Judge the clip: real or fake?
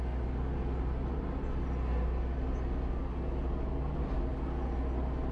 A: real